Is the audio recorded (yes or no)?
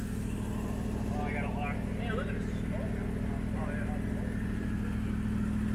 yes